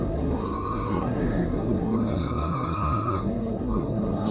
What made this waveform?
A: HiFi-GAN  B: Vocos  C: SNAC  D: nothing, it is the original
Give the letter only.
C